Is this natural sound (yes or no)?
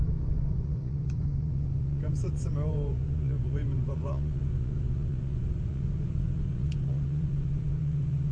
no